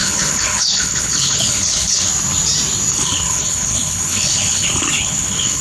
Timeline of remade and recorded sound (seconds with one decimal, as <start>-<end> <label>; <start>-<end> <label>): 0.0-2.1 remade; 2.1-2.9 recorded; 2.9-5.6 remade

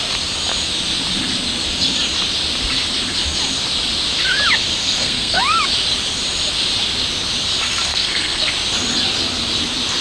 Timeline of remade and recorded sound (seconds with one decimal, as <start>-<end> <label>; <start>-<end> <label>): 0.0-4.8 recorded; 4.8-5.4 remade; 5.4-7.9 recorded; 7.9-8.5 remade; 8.5-10.0 recorded

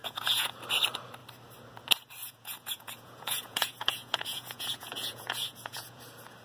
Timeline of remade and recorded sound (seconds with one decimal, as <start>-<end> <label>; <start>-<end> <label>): 0.0-0.6 remade; 0.6-2.2 recorded; 2.2-6.0 remade; 6.0-6.4 recorded

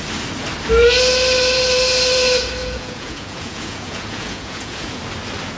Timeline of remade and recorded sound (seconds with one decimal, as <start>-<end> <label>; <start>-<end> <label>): 0.0-2.6 recorded; 2.6-5.0 remade; 5.0-5.6 recorded

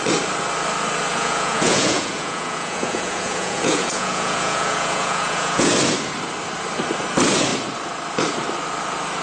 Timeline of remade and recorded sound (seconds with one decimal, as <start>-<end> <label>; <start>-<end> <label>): 0.0-1.1 recorded; 1.1-5.7 remade; 5.7-9.2 recorded

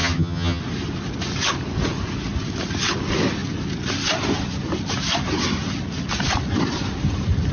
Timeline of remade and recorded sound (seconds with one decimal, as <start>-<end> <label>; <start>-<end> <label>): 0.0-0.6 remade; 0.6-7.5 recorded

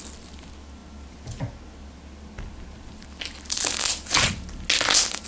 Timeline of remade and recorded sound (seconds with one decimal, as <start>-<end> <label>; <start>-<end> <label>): 0.0-5.3 recorded